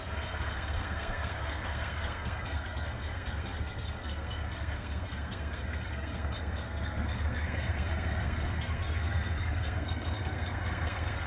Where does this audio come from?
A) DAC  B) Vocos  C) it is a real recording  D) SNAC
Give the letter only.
D